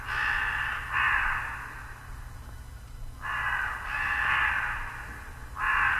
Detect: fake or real real